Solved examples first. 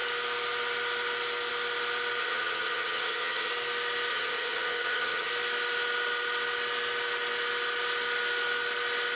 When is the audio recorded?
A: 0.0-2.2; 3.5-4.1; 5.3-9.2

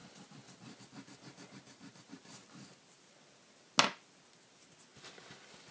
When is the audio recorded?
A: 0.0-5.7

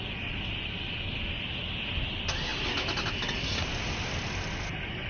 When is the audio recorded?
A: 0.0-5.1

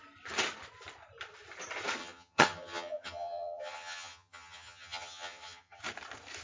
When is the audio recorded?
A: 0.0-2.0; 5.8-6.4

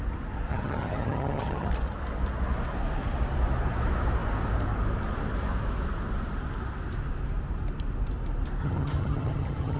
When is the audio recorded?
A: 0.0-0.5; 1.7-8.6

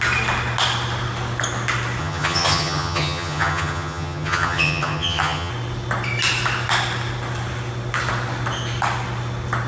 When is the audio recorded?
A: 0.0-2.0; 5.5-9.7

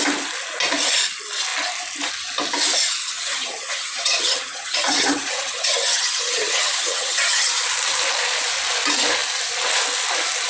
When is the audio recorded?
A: 0.0-3.0; 7.5-10.5